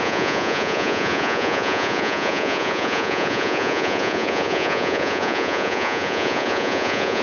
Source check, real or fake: fake